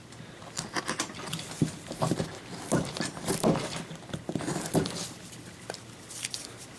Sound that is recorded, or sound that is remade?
recorded